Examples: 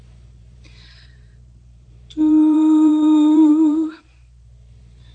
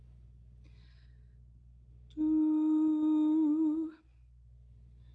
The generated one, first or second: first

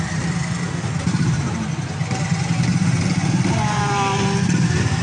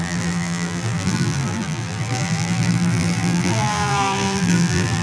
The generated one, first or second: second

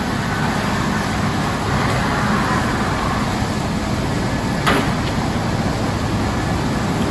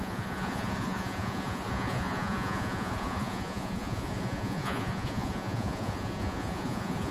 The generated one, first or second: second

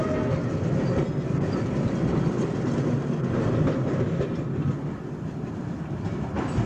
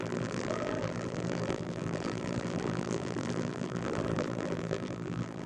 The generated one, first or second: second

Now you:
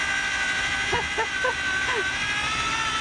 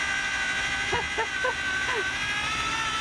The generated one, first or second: first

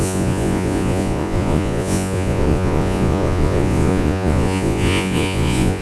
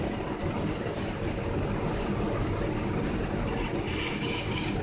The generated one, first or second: first